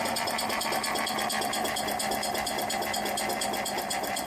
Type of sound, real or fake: real